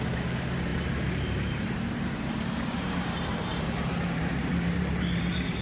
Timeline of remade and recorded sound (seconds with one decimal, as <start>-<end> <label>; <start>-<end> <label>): 0.0-5.6 remade